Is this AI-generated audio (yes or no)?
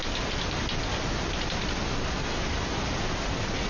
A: no